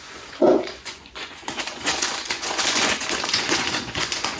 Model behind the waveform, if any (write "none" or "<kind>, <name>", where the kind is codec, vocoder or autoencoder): vocoder, Vocos